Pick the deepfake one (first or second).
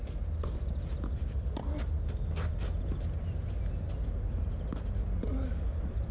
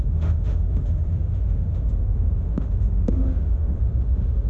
second